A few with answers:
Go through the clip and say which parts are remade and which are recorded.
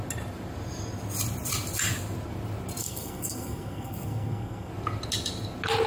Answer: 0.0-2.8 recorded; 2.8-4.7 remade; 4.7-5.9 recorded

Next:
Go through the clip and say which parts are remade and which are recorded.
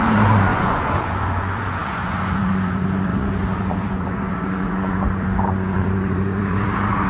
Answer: 0.0-7.1 remade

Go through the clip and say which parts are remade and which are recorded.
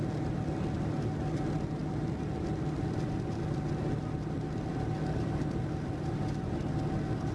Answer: 0.0-4.7 recorded; 4.7-6.6 remade; 6.6-7.3 recorded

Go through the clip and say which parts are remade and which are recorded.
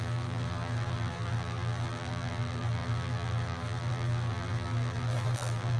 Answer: 0.0-5.8 remade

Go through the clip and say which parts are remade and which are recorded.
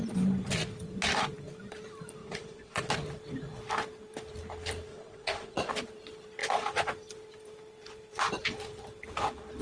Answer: 0.0-2.2 recorded; 2.2-2.9 remade; 2.9-4.9 recorded; 4.9-5.7 remade; 5.7-6.4 recorded; 6.4-6.9 remade; 6.9-9.6 recorded